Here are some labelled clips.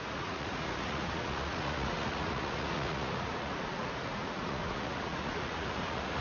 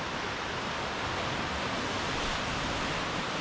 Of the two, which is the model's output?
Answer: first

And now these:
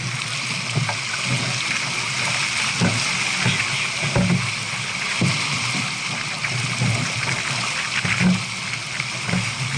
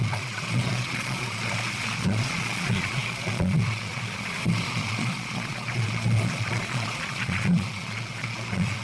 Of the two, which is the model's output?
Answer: second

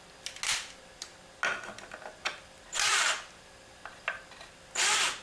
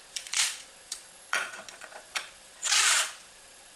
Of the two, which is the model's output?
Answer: second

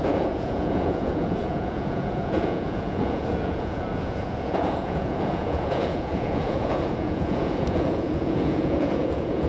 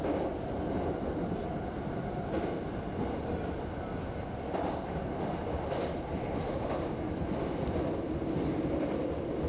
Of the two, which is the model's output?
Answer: first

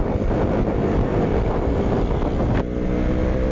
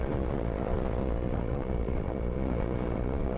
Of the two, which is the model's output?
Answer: second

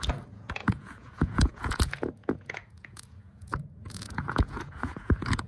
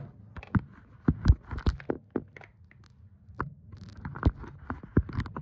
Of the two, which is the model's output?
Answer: first